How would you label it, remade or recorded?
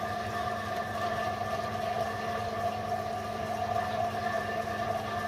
recorded